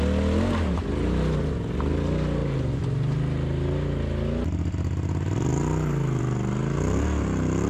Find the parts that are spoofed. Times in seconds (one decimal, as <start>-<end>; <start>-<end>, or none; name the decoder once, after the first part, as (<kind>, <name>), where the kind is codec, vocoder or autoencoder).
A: none